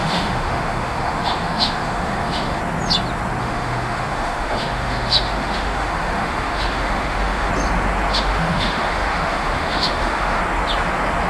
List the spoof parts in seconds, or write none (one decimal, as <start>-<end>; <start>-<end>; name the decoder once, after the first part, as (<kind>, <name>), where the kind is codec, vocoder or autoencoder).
0.0-2.6 (autoencoder, DAC-VAE); 3.4-7.5; 8.1-10.4